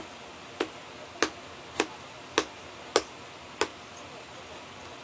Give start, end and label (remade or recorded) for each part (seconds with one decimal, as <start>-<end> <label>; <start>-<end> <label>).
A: 0.0-5.0 recorded

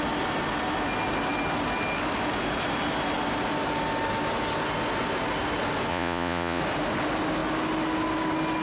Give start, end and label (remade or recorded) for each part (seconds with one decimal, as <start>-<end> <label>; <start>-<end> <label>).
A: 0.0-5.9 recorded; 5.9-6.6 remade; 6.6-8.6 recorded

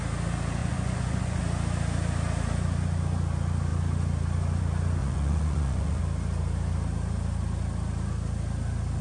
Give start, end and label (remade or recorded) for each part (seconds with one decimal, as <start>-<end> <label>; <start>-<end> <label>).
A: 0.0-0.6 recorded; 0.6-1.4 remade; 1.4-5.0 recorded; 5.0-6.0 remade; 6.0-9.0 recorded

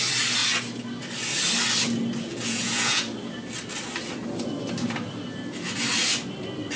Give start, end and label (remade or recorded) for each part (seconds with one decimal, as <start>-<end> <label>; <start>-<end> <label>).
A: 0.0-2.3 recorded; 2.3-3.0 remade; 3.0-6.8 recorded

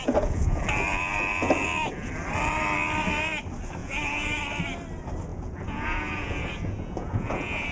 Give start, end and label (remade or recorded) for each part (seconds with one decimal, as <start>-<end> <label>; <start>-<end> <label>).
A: 0.0-0.6 remade; 0.6-3.8 recorded; 3.8-4.4 remade; 4.4-5.3 recorded; 5.3-7.7 remade

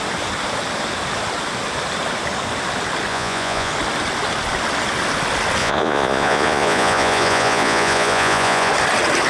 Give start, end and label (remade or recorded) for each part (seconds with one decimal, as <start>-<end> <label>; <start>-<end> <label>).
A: 0.0-3.1 recorded; 3.1-3.7 remade; 3.7-5.6 recorded; 5.6-8.7 remade; 8.7-9.3 recorded